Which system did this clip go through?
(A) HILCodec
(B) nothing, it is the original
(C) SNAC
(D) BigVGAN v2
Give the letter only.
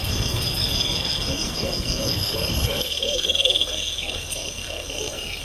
C